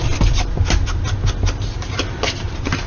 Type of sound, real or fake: real